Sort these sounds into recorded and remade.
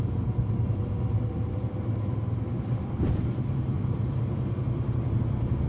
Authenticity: remade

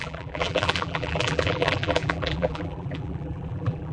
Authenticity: remade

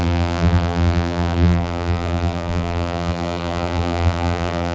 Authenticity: remade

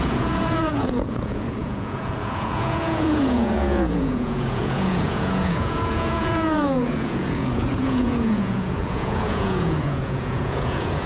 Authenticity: remade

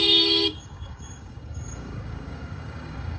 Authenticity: remade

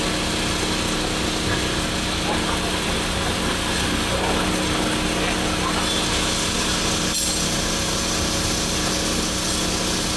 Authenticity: recorded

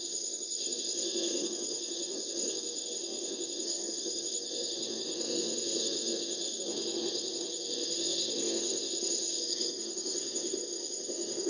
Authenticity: remade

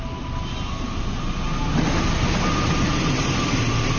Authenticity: recorded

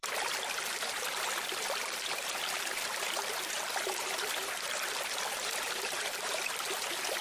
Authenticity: remade